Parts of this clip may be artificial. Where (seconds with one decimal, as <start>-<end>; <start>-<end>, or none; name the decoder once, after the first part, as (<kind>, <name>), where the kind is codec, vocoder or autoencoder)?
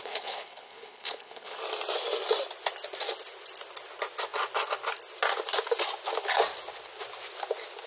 0.0-1.6 (codec, HILCodec)